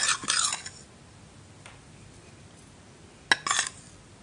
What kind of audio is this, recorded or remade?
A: recorded